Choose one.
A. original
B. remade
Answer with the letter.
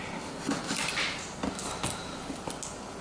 A